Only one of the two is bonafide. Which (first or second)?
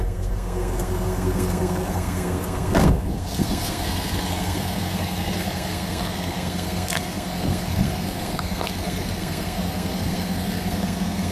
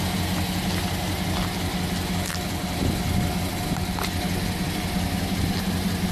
second